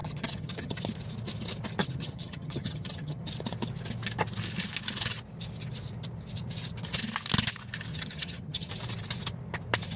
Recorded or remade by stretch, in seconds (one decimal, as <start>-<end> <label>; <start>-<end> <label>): 0.0-0.8 remade; 0.8-1.8 recorded; 1.8-3.2 remade; 3.2-7.9 recorded; 7.9-8.7 remade; 8.7-10.0 recorded